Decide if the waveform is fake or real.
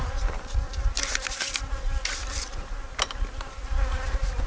real